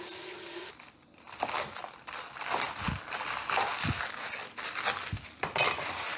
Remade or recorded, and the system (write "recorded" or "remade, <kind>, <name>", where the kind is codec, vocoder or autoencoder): recorded